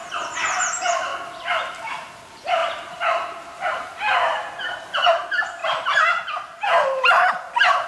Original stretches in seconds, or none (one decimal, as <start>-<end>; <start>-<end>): 0.0-0.7; 1.1-2.1; 5.6-6.8